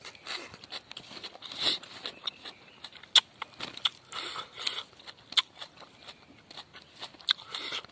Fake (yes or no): no